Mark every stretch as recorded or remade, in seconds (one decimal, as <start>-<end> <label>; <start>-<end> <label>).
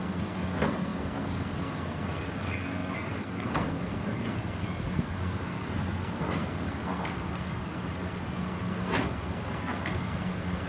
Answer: 0.0-10.7 remade